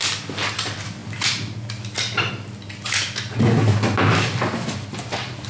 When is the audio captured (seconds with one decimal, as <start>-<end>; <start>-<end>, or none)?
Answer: 0.0-5.5